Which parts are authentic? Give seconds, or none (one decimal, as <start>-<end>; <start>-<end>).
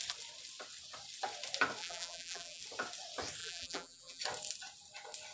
0.0-1.8; 2.6-3.4; 4.2-5.3